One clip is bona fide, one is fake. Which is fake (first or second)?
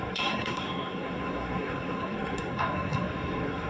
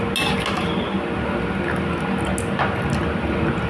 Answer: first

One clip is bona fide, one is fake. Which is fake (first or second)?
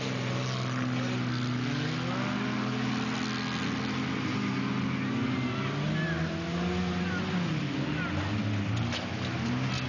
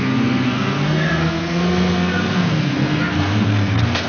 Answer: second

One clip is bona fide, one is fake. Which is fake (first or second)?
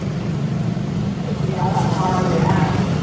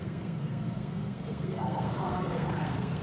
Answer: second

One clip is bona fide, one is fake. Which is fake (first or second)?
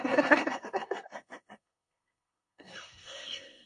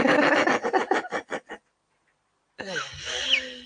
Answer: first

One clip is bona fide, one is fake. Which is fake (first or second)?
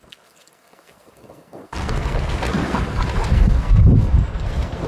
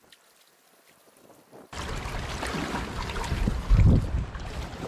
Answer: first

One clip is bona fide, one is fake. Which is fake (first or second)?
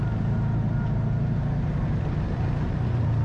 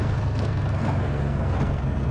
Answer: second